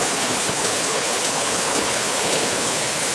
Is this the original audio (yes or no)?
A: no